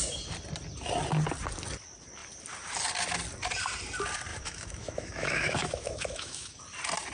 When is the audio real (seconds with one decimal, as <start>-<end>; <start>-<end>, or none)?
0.0-4.3; 6.6-7.1